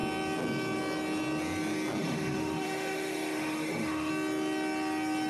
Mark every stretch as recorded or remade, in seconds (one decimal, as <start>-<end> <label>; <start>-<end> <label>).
0.0-2.0 recorded; 2.0-4.1 remade; 4.1-5.3 recorded